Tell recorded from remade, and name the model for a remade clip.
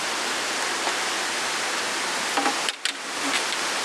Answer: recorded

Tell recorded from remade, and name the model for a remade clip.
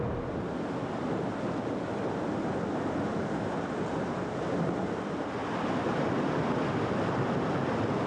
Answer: recorded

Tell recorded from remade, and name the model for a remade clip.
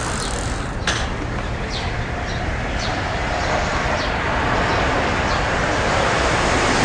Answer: recorded